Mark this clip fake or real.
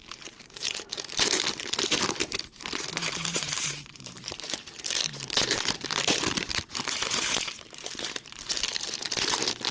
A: fake